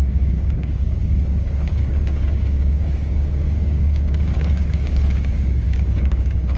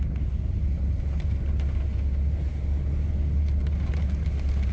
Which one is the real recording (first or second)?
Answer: second